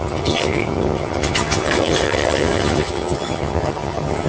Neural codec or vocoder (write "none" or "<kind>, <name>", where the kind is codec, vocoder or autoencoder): vocoder, HiFi-GAN